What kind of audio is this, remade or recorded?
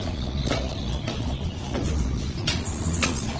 remade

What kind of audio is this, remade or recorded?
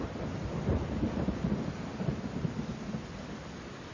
remade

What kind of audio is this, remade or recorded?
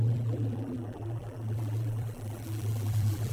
remade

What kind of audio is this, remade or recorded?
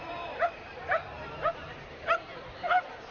remade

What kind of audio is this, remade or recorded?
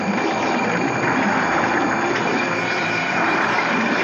remade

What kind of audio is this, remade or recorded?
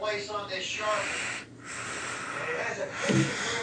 recorded